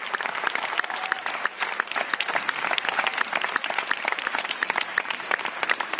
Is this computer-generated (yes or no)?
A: yes